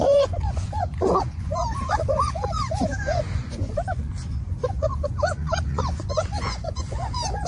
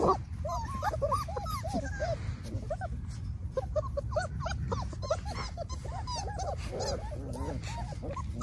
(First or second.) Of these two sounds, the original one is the second